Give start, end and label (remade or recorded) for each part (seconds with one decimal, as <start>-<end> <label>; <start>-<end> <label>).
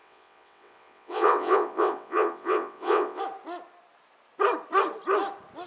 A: 0.0-3.2 remade; 3.2-5.7 recorded